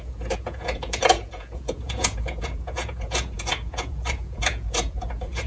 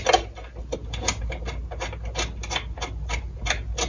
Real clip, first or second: second